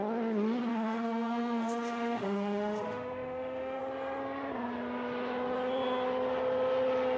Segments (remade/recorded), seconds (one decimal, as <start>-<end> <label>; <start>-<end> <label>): 0.0-0.7 recorded; 0.7-3.8 remade; 3.8-7.2 recorded